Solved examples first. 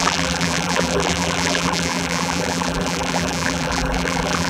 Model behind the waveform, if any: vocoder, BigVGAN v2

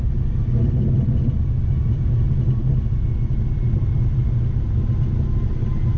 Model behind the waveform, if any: none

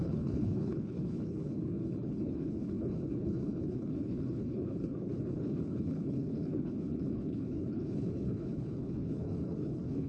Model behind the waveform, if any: codec, HILCodec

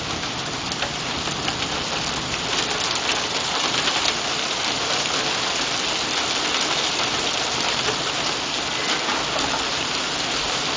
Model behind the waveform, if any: none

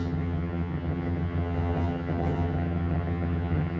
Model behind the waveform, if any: vocoder, HiFi-GAN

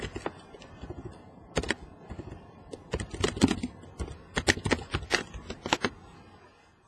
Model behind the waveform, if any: none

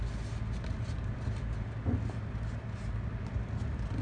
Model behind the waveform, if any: none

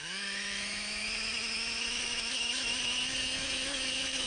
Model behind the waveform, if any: autoencoder, DAC-VAE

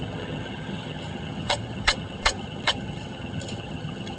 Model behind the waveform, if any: vocoder, HiFi-GAN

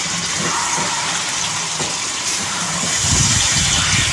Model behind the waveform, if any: vocoder, BigVGAN v2